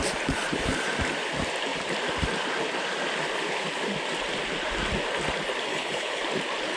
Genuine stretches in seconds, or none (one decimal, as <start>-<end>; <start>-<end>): 0.0-5.7; 6.2-6.8